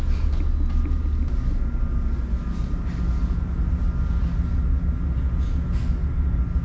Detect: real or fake real